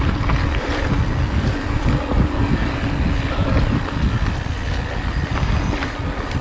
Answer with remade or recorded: recorded